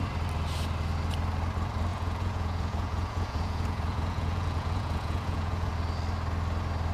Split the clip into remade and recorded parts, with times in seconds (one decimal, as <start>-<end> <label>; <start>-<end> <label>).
0.0-1.9 recorded; 1.9-5.7 remade; 5.7-6.9 recorded